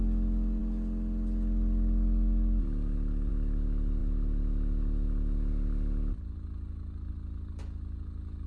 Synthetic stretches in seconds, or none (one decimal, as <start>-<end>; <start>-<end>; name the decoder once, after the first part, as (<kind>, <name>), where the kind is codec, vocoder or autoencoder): none

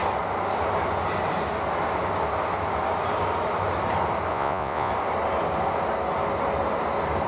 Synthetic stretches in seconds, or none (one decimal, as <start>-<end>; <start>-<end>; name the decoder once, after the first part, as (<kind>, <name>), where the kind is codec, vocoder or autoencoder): 4.3-4.9 (vocoder, Vocos)